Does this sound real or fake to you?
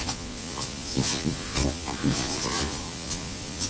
fake